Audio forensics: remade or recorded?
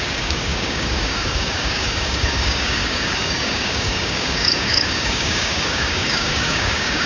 remade